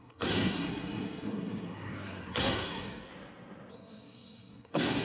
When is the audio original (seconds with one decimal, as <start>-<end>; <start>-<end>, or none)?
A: 3.1-3.7